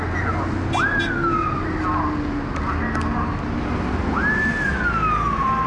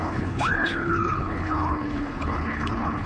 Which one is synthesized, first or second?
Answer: second